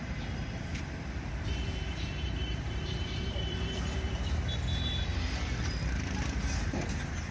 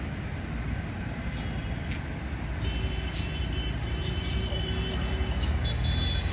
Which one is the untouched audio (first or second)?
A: second